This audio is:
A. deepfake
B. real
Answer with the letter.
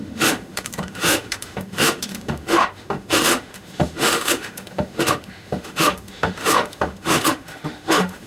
A